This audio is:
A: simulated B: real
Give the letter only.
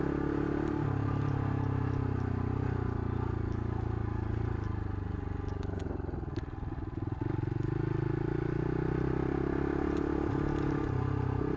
B